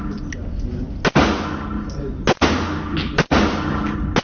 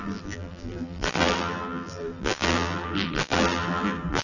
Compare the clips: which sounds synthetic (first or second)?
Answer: second